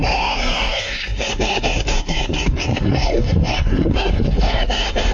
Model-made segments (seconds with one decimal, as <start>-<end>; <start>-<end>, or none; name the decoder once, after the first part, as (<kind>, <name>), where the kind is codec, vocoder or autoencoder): 0.0-5.1 (codec, SNAC)